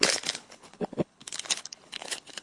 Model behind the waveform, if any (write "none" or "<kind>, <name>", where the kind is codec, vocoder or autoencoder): codec, HILCodec